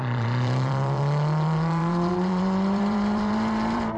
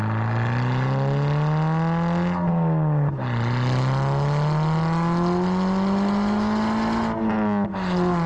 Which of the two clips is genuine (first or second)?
second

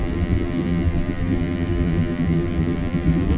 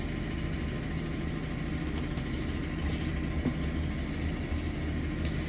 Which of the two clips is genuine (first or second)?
second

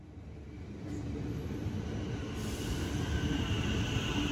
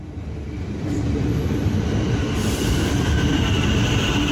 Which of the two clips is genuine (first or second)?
first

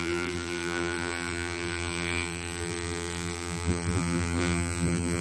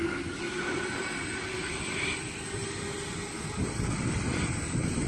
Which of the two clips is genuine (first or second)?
second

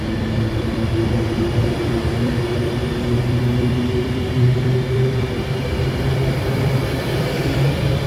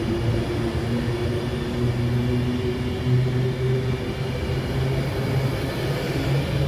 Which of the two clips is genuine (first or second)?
second